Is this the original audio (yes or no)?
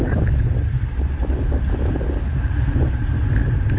yes